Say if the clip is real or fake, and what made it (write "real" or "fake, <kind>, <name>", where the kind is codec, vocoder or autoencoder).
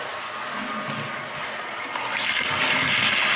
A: real